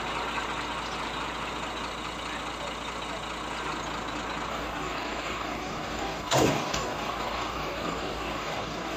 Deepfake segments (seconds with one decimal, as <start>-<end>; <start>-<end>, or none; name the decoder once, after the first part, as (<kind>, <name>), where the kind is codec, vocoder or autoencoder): 4.5-9.0 (codec, DAC)